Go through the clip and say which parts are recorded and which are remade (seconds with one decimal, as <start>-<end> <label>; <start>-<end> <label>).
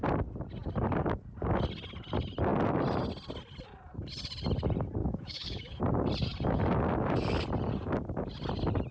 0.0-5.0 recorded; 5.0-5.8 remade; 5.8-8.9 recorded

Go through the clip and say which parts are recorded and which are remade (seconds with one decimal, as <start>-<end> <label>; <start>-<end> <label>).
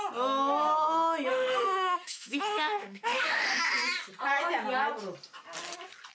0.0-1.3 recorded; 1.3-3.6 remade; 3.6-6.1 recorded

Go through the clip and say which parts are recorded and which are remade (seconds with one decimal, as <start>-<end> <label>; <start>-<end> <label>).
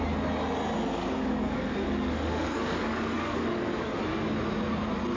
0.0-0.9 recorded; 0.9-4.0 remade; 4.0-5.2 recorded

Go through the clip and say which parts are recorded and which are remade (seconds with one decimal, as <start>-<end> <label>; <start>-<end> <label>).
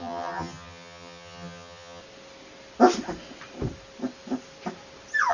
0.0-2.0 remade; 2.0-5.3 recorded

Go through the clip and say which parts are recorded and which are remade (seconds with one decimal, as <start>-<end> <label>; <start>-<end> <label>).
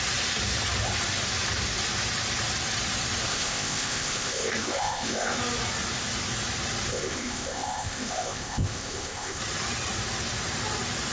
0.0-3.3 recorded; 3.3-5.4 remade; 5.4-6.9 recorded; 6.9-9.4 remade; 9.4-11.1 recorded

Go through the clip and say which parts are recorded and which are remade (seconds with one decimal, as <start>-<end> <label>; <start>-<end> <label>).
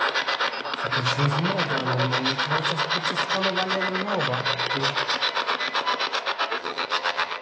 0.0-6.6 recorded; 6.6-7.4 remade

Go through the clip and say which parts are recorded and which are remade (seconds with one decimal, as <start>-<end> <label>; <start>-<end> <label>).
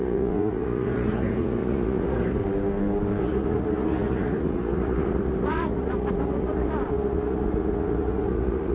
0.0-2.4 remade; 2.4-3.2 recorded; 3.2-8.7 remade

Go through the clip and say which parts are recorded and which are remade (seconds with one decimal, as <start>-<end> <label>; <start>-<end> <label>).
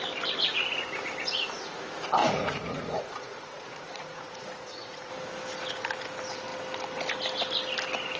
0.0-2.2 recorded; 2.2-5.1 remade; 5.1-8.2 recorded